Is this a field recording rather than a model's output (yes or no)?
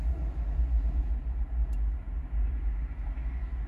yes